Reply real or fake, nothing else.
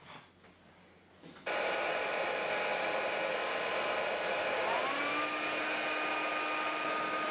real